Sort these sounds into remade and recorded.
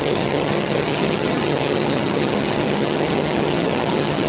remade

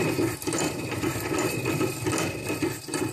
recorded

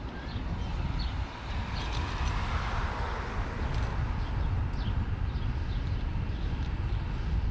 recorded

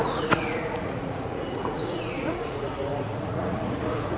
remade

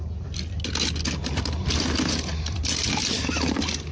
recorded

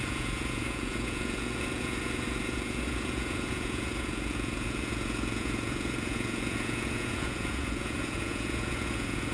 remade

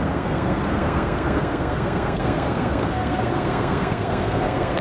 remade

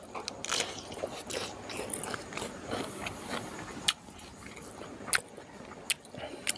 recorded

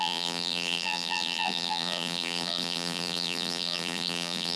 remade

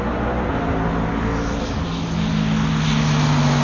recorded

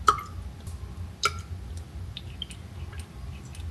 recorded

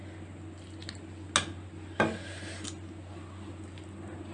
recorded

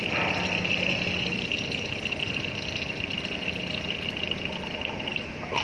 recorded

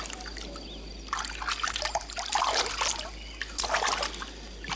recorded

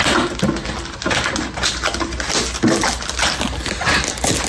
recorded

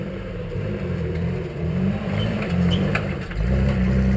remade